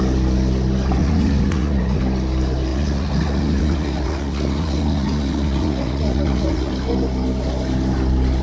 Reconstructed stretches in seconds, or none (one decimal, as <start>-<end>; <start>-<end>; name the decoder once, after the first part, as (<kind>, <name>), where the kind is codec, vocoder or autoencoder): 1.0-2.0 (vocoder, Vocos); 2.7-6.7

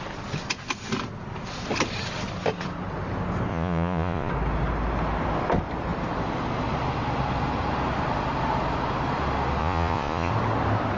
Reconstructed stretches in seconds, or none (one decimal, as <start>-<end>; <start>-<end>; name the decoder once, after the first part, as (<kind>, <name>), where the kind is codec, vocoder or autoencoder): 3.5-4.3 (vocoder, Vocos); 9.6-10.3

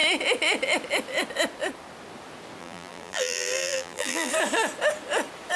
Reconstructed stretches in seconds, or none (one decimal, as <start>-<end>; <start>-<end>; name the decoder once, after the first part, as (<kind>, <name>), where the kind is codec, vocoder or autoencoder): 2.6-4.3 (vocoder, BigVGAN v2)

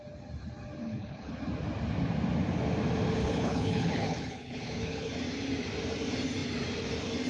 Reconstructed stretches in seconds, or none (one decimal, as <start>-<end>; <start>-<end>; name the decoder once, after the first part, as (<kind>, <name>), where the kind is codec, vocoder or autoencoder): 0.8-1.3 (codec, HILCodec); 3.2-5.1